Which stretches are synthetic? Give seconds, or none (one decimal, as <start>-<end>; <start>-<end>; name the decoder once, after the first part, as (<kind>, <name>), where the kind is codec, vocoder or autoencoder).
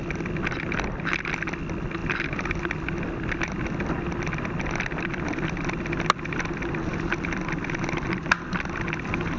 none